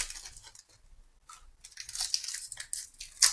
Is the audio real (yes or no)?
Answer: yes